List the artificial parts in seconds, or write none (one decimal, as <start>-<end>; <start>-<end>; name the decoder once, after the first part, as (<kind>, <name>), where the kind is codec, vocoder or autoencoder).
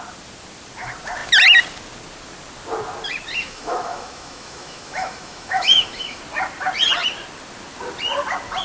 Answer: 3.4-6.2 (autoencoder, DAC-VAE)